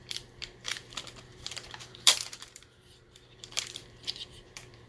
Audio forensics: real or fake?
fake